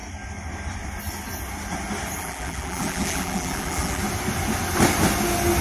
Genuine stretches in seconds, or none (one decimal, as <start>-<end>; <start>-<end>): 0.0-2.2; 4.0-5.6